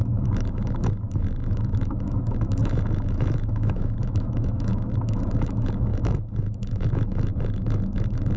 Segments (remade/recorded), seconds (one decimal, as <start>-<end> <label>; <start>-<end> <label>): 0.0-8.4 remade